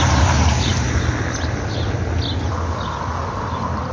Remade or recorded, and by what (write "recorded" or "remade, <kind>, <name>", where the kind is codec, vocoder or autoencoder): recorded